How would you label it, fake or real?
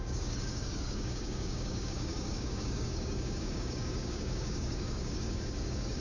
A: fake